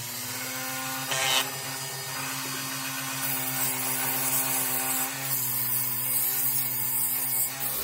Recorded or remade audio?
recorded